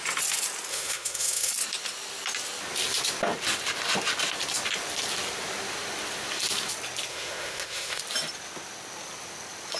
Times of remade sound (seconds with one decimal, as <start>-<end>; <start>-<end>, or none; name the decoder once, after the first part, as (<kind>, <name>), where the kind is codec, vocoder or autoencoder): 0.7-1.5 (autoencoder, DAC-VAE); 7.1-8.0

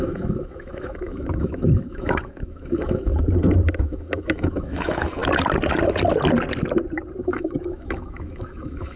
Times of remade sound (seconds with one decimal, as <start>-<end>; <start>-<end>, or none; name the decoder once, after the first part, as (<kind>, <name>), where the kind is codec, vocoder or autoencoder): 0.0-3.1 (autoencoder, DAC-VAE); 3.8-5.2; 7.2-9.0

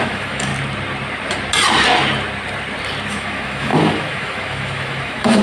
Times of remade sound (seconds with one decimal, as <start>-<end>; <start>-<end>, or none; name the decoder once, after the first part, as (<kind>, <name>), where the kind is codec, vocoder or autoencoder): 0.0-0.5 (autoencoder, DAC-VAE); 3.1-5.4

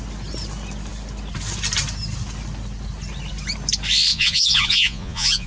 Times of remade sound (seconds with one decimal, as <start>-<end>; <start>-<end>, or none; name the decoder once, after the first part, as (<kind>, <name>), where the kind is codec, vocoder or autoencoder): 4.1-5.5 (vocoder, Vocos)

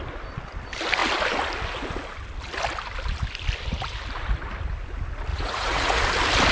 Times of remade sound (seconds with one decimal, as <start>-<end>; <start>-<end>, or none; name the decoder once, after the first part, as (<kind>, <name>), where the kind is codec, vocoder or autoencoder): 5.3-6.0 (vocoder, Vocos)